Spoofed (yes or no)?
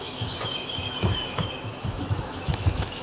yes